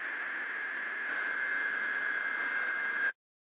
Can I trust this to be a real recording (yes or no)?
yes